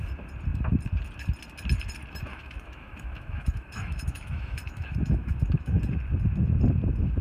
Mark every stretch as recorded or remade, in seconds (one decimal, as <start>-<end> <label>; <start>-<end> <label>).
0.0-2.3 recorded; 2.3-5.8 remade; 5.8-7.2 recorded

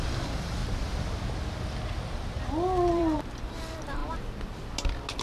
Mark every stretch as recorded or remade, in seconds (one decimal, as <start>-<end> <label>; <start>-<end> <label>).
0.0-0.6 remade; 0.6-2.9 recorded; 2.9-4.0 remade; 4.0-5.2 recorded

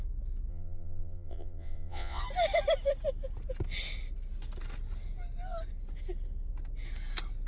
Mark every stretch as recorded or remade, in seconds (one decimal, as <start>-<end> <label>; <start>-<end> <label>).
0.0-0.5 recorded; 0.5-2.2 remade; 2.2-7.5 recorded

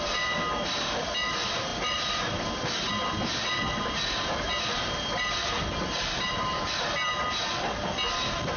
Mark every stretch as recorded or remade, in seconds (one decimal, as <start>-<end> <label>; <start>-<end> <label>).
0.0-8.6 recorded

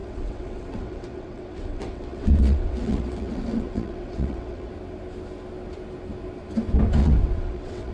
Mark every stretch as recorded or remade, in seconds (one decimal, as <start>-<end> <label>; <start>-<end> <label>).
0.0-4.7 remade; 4.7-7.0 recorded; 7.0-7.9 remade